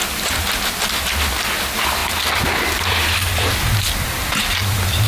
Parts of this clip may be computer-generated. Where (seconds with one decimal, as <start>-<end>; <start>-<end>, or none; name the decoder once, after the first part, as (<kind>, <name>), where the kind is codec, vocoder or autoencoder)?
none